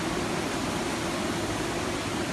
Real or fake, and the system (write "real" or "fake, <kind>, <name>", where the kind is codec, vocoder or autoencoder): real